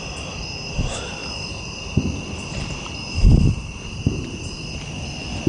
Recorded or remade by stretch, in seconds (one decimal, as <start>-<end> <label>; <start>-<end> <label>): 0.0-5.5 recorded